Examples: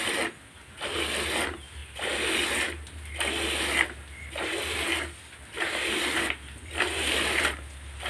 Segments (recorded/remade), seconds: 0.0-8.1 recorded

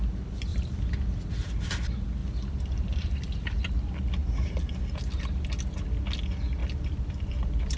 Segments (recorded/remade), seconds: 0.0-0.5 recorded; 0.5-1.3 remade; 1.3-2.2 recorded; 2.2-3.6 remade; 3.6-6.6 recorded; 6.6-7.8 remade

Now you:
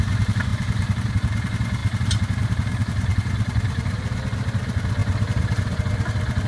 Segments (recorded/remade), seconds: 0.0-0.5 recorded; 0.5-1.1 remade; 1.1-1.8 recorded; 1.8-4.0 remade; 4.0-5.0 recorded; 5.0-5.8 remade; 5.8-6.5 recorded

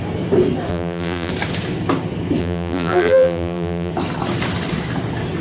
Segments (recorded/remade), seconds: 0.0-0.7 recorded; 0.7-1.3 remade; 1.3-2.4 recorded; 2.4-3.9 remade; 3.9-5.4 recorded

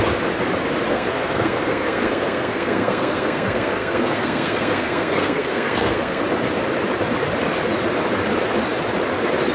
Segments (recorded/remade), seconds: 0.0-0.9 recorded; 0.9-6.2 remade; 6.2-9.5 recorded

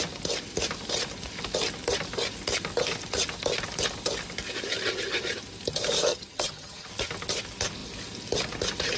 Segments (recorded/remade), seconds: 0.0-6.1 recorded; 6.1-6.9 remade; 6.9-9.0 recorded